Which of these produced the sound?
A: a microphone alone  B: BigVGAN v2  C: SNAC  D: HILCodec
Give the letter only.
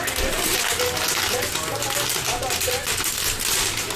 A